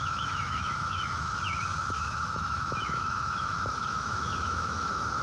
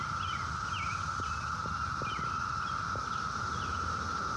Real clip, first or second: second